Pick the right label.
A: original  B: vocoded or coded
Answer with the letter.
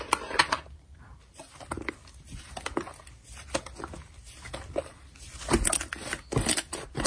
A